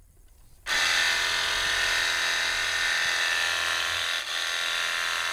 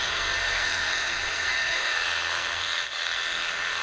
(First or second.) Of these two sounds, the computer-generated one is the second